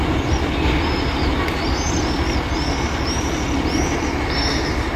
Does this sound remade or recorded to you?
recorded